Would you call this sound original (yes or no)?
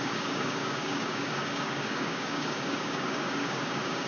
no